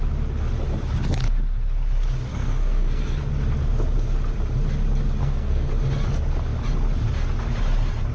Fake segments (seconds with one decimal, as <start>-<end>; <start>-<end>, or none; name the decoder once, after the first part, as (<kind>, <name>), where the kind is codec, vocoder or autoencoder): 2.3-3.2 (codec, SNAC); 5.2-5.7